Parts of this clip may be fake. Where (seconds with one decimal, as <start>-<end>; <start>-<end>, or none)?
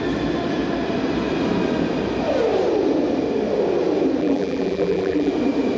4.2-5.3